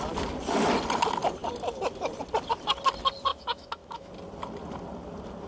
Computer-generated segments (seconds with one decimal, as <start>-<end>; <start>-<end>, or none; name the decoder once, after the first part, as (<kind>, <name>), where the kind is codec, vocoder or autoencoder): 3.3-4.1 (autoencoder, DAC-VAE)